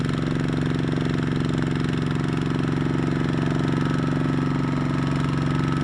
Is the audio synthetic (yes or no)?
no